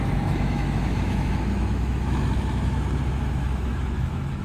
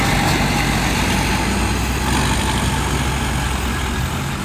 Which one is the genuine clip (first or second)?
second